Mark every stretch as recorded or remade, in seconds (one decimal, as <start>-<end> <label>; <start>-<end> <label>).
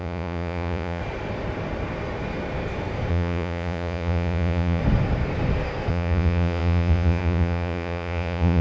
0.0-1.0 remade; 1.0-3.1 recorded; 3.1-4.8 remade; 4.8-5.9 recorded; 5.9-8.6 remade